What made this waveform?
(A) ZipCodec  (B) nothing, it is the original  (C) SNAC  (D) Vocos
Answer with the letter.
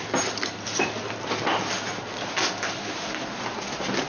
B